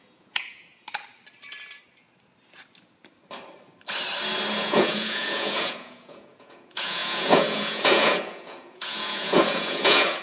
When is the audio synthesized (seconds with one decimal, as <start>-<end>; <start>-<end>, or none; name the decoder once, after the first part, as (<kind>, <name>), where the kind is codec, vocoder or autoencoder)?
0.0-0.7 (vocoder, Vocos); 4.6-10.2